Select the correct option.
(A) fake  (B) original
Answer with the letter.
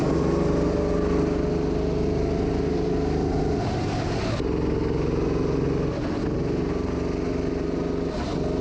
B